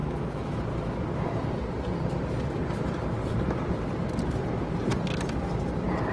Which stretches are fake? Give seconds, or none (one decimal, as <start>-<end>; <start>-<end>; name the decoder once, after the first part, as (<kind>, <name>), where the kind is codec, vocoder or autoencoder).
0.0-0.6 (autoencoder, DAC-VAE)